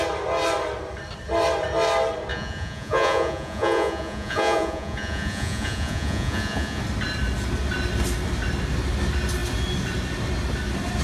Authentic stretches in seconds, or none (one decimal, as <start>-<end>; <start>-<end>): 0.0-2.3; 6.8-11.0